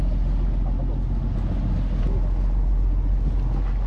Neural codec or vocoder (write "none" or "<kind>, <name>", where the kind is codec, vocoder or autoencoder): none